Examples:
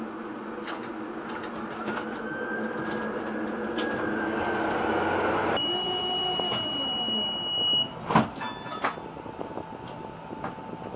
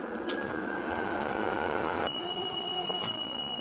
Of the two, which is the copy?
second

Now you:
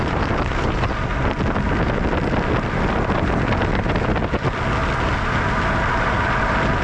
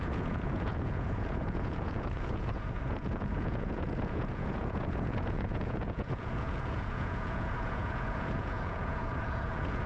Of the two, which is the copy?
second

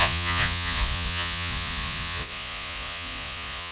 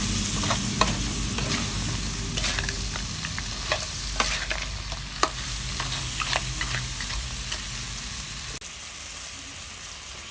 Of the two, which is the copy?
first